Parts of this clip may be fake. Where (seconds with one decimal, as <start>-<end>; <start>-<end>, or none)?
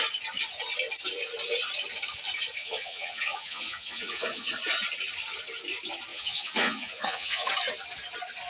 2.6-4.5; 6.1-7.5